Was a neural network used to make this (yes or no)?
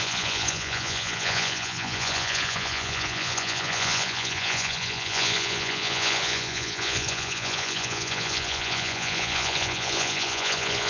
yes